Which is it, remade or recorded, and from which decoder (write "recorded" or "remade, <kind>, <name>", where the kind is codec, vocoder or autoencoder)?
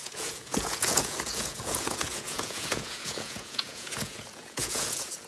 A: remade, vocoder, Vocos